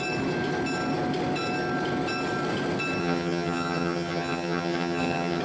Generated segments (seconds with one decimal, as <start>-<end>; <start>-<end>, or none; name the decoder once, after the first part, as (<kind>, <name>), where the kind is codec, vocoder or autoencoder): 3.0-5.4 (vocoder, HiFi-GAN)